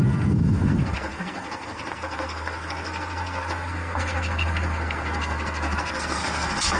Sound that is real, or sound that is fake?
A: fake